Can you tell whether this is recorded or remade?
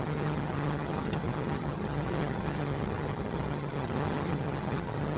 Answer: remade